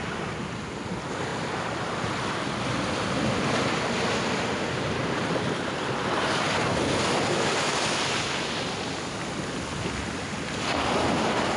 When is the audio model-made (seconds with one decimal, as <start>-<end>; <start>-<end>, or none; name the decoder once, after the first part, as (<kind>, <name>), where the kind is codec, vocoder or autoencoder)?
none